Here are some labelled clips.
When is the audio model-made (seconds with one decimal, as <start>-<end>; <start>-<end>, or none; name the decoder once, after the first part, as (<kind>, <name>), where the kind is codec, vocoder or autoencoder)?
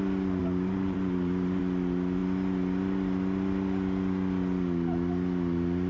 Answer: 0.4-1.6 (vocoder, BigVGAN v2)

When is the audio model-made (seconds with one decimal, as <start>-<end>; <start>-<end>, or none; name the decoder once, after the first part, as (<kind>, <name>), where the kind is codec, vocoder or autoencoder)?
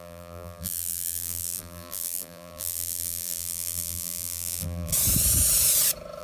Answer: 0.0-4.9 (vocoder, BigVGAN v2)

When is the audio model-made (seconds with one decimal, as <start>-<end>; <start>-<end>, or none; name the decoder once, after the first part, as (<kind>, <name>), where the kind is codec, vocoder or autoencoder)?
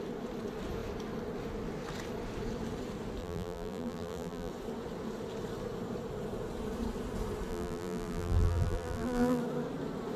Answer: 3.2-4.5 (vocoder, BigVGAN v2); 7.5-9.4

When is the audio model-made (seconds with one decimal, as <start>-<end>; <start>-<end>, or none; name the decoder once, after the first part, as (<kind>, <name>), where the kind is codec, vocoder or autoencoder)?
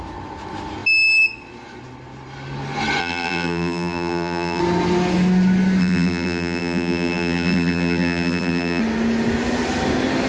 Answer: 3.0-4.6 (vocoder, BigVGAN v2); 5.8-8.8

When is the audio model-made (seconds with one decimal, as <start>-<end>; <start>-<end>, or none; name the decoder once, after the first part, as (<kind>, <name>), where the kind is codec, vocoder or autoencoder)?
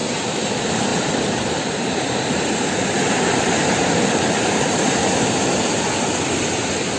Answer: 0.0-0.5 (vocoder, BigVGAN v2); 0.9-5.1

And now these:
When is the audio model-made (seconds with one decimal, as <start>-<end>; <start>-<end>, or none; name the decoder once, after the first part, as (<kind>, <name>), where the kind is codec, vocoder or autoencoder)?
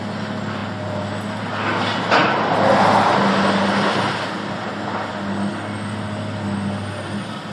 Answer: none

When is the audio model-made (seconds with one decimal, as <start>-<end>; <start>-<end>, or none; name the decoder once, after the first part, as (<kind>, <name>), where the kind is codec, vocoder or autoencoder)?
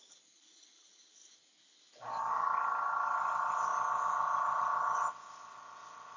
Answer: none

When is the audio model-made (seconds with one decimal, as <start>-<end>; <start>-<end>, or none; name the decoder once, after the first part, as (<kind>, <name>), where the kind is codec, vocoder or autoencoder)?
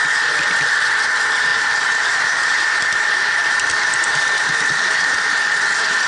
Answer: 1.5-5.2 (vocoder, BigVGAN v2)